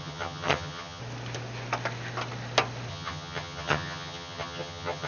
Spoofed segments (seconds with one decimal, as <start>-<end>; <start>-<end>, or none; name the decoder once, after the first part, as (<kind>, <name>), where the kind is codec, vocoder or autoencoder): 0.0-1.0 (vocoder, HiFi-GAN); 2.9-5.1

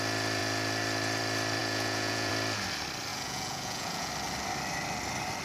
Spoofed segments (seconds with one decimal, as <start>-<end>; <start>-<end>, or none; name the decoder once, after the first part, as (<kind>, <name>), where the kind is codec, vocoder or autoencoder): 1.6-2.3 (vocoder, Vocos); 3.1-4.1

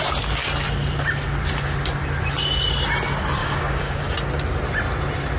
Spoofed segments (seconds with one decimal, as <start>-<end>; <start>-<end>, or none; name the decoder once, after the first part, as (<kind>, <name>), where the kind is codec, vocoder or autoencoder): 3.4-4.0 (codec, DAC)

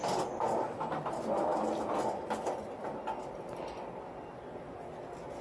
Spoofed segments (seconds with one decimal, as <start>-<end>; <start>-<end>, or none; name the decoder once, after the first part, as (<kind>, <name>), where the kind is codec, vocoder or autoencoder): none

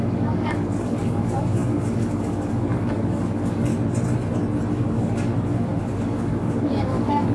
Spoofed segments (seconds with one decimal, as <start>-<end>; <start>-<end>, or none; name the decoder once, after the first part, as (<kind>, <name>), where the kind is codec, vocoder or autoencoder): 0.0-3.7 (codec, DAC); 4.7-7.3